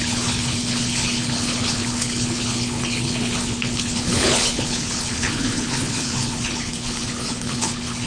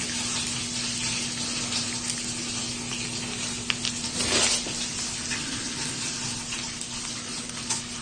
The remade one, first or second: first